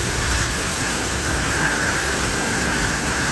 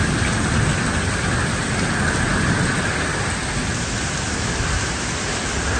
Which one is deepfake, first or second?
first